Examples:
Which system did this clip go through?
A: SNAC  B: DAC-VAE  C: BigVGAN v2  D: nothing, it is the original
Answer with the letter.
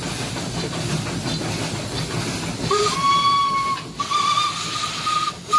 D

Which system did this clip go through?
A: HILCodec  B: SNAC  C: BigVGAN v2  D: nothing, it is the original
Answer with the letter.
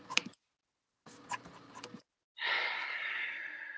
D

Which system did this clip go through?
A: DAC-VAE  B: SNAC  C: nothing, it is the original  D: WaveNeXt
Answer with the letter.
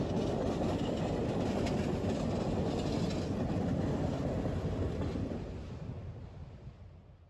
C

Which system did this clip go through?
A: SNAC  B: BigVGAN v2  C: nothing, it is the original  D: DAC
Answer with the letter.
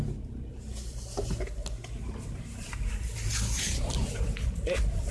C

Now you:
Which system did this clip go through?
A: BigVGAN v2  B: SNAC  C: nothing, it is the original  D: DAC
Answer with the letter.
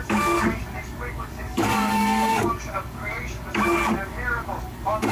D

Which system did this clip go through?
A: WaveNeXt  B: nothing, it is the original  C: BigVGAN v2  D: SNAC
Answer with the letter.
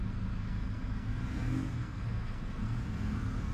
D